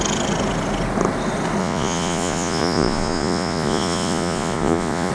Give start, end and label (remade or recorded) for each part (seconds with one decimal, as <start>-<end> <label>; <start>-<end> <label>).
0.0-1.6 recorded; 1.6-5.1 remade